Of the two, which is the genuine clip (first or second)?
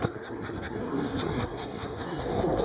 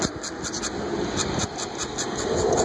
second